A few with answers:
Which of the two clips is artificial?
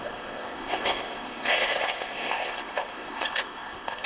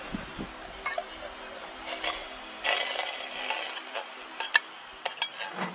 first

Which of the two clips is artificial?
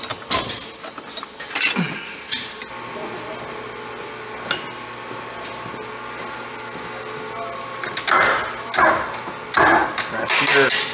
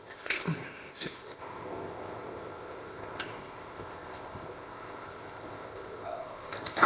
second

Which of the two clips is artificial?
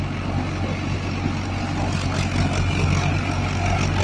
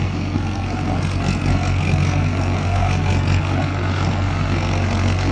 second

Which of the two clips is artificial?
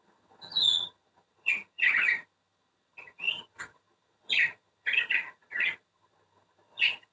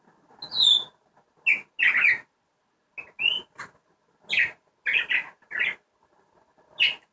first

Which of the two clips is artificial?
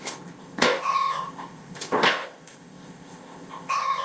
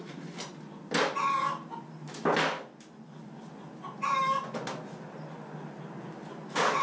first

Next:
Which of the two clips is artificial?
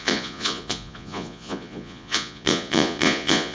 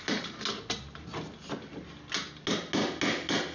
first